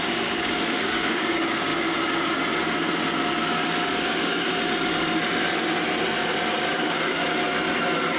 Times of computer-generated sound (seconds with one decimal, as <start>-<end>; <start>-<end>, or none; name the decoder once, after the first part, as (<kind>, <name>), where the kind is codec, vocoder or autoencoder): 0.0-1.7 (codec, DAC); 3.9-4.5; 6.5-7.2